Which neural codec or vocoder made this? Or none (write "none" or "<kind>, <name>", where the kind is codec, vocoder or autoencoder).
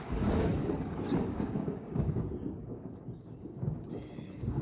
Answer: codec, DAC